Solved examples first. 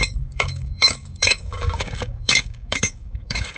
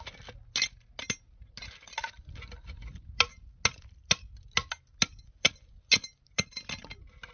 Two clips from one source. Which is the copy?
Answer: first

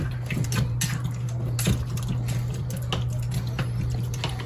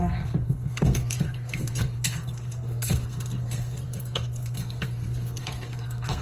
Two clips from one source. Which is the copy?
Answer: second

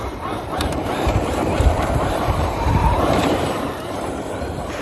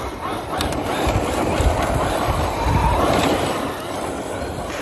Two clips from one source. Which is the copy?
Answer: first